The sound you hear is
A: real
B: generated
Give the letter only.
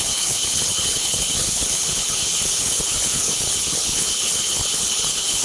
B